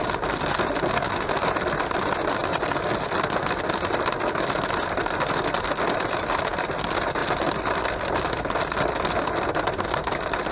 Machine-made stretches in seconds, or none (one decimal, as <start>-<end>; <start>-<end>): 2.4-5.4; 7.2-9.6